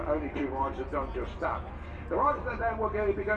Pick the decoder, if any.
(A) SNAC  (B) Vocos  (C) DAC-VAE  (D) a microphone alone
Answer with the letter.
D